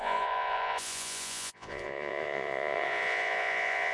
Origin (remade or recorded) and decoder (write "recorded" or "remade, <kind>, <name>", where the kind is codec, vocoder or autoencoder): remade, vocoder, Vocos